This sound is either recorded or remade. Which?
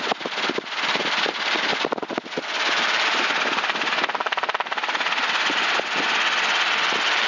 recorded